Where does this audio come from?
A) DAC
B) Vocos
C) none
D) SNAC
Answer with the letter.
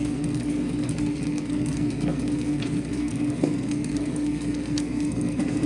D